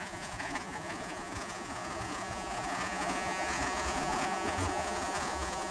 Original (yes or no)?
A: no